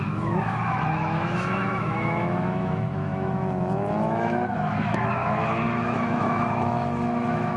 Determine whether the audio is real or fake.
fake